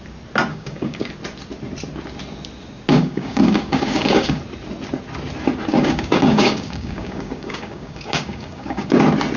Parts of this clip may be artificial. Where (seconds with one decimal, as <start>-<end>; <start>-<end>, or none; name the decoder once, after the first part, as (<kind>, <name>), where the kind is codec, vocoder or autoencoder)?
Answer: 0.5-1.1 (codec, DAC); 2.9-4.4; 5.7-9.0